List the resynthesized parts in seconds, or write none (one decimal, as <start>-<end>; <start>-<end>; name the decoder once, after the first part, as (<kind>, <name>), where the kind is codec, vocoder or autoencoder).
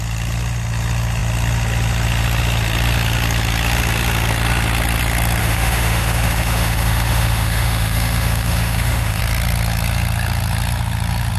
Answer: 5.4-9.2 (autoencoder, DAC-VAE)